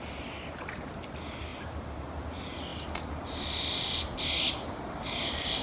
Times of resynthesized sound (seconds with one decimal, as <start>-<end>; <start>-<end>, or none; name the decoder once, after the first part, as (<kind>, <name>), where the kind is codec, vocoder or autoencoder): none